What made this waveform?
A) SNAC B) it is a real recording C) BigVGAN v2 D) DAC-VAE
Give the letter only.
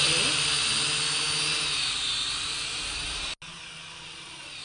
B